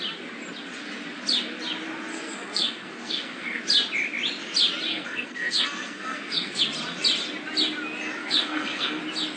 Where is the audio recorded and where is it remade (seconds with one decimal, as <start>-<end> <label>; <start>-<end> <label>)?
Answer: 0.0-2.1 recorded; 2.1-3.6 remade; 3.6-4.9 recorded; 4.9-6.6 remade; 6.6-8.2 recorded; 8.2-9.0 remade; 9.0-9.4 recorded